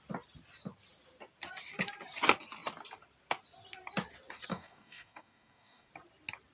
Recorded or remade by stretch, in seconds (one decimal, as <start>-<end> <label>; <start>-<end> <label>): 0.0-4.5 recorded; 4.5-5.9 remade; 5.9-6.5 recorded